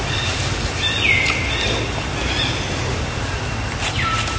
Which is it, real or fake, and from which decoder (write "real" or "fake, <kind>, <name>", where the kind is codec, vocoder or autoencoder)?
real